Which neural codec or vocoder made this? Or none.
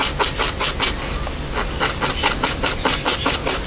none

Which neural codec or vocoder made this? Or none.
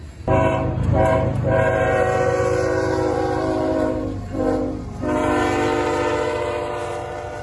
vocoder, BigVGAN v2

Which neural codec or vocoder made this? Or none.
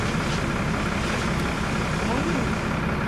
none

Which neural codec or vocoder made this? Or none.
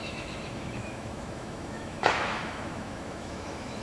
autoencoder, DAC-VAE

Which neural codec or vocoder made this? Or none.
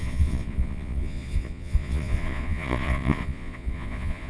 vocoder, Vocos